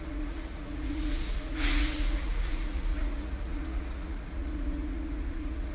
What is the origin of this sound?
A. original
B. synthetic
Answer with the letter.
B